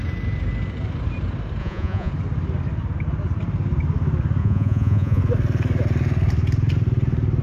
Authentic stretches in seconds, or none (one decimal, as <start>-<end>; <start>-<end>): 0.0-1.6; 2.1-4.4; 5.2-7.4